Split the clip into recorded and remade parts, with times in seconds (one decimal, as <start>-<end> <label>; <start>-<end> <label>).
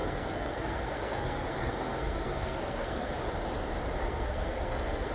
0.0-3.1 remade; 3.1-4.0 recorded; 4.0-5.1 remade